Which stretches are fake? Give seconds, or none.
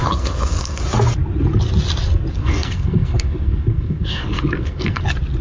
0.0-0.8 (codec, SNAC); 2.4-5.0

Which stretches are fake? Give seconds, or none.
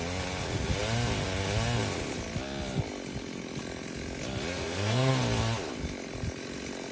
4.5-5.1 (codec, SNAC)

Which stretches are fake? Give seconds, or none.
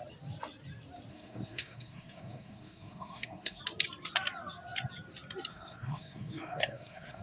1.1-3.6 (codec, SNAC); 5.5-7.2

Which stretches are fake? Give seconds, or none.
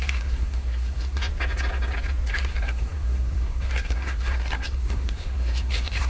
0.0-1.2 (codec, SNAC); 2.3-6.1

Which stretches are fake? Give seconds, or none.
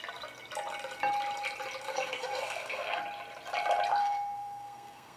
1.9-3.0 (codec, SNAC); 4.0-5.2